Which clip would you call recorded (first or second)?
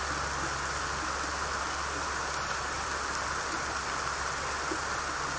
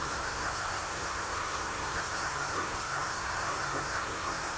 first